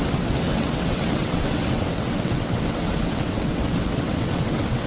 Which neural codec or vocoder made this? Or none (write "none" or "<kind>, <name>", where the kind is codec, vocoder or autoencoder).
vocoder, WaveNeXt